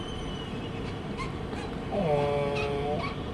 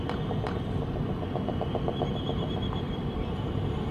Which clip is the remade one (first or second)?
second